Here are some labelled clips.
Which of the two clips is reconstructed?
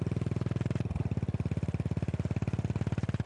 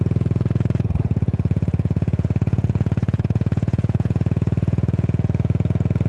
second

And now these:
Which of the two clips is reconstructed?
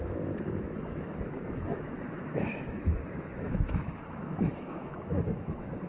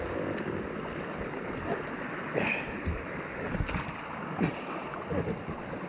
first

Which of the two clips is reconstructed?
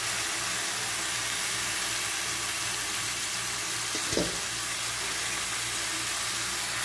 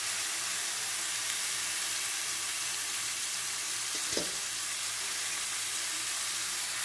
second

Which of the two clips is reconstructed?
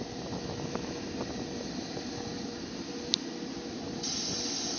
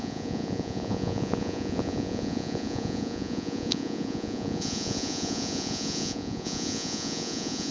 second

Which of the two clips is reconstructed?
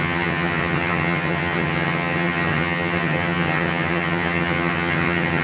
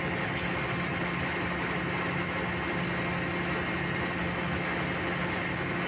first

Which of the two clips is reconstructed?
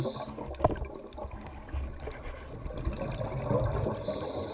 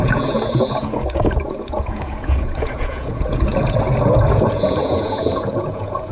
second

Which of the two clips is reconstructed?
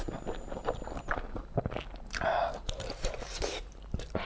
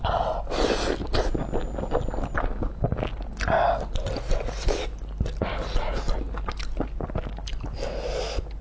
first